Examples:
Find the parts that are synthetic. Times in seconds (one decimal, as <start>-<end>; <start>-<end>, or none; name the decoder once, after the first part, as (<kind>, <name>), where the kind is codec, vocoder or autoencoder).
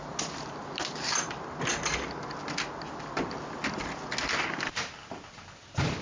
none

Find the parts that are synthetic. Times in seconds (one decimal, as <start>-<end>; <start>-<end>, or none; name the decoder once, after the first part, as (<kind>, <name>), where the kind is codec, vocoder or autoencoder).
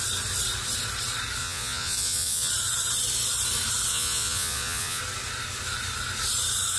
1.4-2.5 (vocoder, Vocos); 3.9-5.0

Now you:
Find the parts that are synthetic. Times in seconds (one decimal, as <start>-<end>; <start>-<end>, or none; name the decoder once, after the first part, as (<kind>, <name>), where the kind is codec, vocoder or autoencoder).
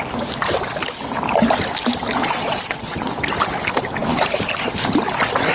2.2-3.1 (vocoder, Vocos)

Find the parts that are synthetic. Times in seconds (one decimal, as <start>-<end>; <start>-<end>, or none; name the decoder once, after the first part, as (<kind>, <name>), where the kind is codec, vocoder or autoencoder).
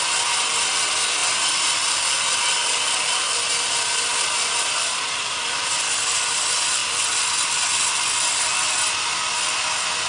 none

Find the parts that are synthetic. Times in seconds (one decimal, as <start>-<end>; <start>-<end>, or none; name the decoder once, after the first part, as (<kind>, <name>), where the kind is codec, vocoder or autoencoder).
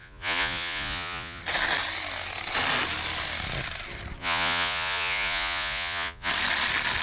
0.0-1.4 (vocoder, Vocos); 4.2-6.3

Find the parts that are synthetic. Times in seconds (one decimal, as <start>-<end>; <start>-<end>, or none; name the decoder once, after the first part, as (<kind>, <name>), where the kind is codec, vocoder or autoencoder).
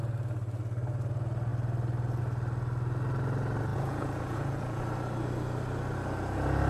3.7-4.8 (vocoder, Vocos)